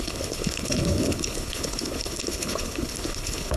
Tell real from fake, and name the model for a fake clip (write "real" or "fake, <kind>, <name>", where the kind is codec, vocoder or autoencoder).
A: fake, codec, HILCodec